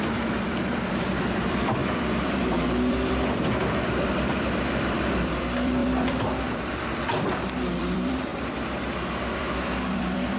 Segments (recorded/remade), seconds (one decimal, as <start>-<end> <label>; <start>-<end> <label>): 0.0-8.3 remade; 8.3-9.2 recorded; 9.2-10.4 remade